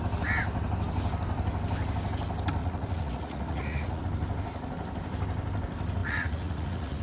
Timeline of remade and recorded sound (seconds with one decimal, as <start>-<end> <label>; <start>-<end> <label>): 0.0-2.6 recorded; 2.6-4.0 remade; 4.0-6.0 recorded; 6.0-7.0 remade

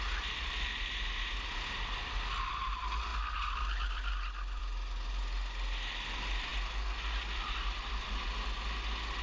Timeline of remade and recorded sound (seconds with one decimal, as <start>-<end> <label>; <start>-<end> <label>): 0.0-9.2 recorded

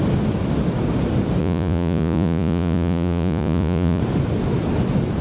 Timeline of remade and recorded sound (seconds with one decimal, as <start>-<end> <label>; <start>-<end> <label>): 0.0-1.4 recorded; 1.4-4.0 remade; 4.0-5.2 recorded

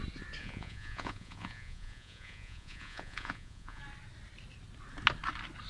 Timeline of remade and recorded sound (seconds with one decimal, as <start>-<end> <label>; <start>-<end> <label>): 0.0-0.4 recorded; 0.4-3.8 remade; 3.8-5.7 recorded

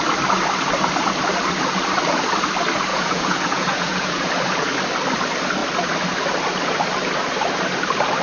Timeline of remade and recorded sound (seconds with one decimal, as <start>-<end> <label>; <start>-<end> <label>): 0.0-2.9 recorded; 2.9-4.3 remade; 4.3-8.2 recorded

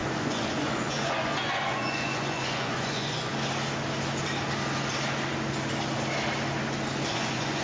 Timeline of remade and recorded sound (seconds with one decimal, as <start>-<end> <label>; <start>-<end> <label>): 0.0-3.3 remade; 3.3-7.1 recorded; 7.1-7.6 remade